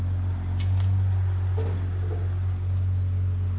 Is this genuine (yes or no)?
yes